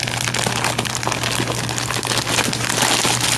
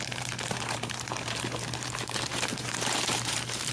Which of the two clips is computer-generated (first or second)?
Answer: second